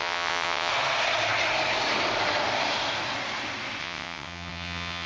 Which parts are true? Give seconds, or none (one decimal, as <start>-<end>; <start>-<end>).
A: 0.7-3.8